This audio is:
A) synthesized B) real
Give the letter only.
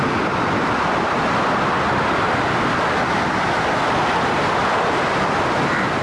B